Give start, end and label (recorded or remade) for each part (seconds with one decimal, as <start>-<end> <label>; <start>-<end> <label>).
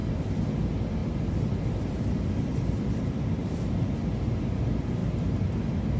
0.0-0.6 remade; 0.6-1.0 recorded; 1.0-3.6 remade; 3.6-6.0 recorded